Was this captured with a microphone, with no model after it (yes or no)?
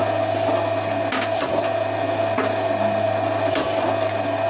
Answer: yes